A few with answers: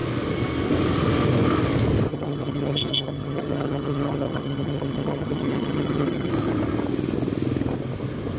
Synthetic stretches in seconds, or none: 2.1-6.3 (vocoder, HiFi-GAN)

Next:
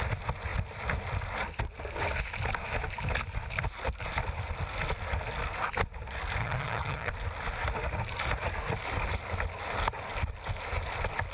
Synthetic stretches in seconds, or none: 6.4-7.1 (vocoder, HiFi-GAN)

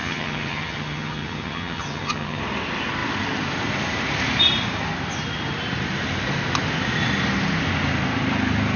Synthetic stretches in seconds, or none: 0.0-2.4 (vocoder, HiFi-GAN)